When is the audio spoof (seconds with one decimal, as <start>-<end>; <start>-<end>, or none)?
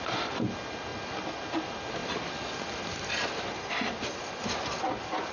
none